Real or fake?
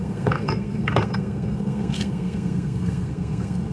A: fake